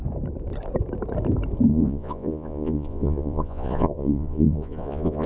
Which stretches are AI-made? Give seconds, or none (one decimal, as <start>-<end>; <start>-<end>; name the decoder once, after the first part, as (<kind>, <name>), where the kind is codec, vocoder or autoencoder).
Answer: 1.7-5.3 (vocoder, Vocos)